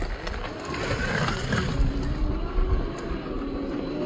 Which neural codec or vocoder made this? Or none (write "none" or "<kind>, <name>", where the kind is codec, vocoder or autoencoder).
none